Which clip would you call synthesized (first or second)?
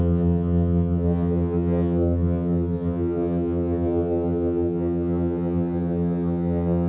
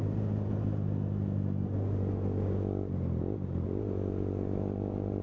first